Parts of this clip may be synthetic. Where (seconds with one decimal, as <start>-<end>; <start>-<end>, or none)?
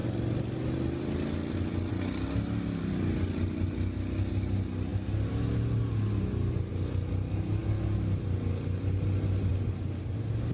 none